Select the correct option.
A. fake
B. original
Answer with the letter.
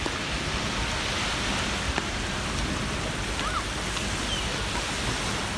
B